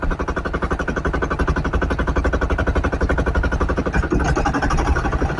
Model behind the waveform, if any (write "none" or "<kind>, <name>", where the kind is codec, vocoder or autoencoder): none